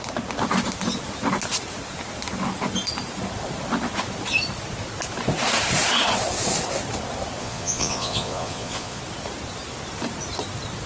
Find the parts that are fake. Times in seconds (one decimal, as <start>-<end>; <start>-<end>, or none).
7.4-9.0

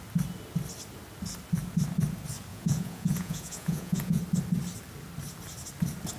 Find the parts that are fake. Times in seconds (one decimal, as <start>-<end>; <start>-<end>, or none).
2.5-4.2

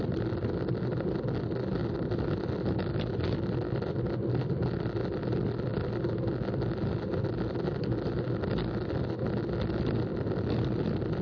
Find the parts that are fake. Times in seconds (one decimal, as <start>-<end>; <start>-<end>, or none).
none

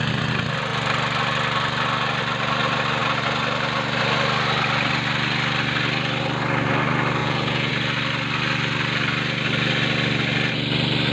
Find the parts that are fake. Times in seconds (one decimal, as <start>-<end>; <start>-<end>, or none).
7.2-7.7